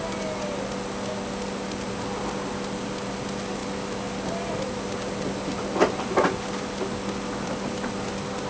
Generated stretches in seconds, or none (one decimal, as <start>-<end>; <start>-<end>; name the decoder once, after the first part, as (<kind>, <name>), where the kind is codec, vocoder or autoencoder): none